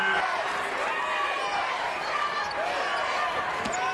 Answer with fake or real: real